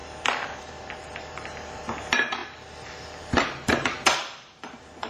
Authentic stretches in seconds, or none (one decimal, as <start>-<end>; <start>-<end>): none